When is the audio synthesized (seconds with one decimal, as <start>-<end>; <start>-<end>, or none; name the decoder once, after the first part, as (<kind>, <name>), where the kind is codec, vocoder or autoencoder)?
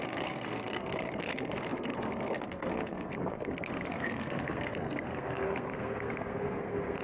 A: 0.0-7.0 (codec, SNAC)